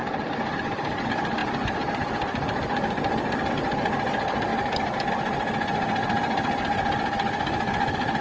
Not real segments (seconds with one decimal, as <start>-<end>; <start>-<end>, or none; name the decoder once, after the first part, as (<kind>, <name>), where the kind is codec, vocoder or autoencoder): none